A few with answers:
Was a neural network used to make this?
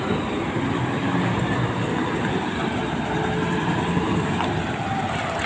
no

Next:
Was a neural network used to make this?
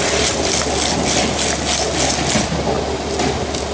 no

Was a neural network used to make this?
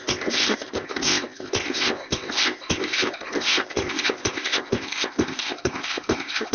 yes